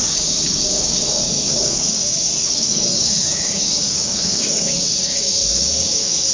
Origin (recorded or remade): remade